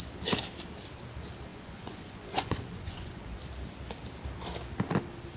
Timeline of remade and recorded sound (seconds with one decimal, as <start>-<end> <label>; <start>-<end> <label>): 0.0-1.5 recorded; 1.5-3.4 remade; 3.4-5.4 recorded